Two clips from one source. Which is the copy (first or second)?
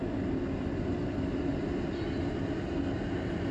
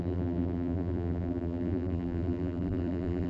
second